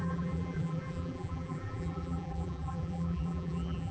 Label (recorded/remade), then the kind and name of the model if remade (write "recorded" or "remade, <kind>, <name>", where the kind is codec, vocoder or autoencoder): remade, vocoder, BigVGAN v2